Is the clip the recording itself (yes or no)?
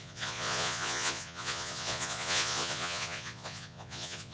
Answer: no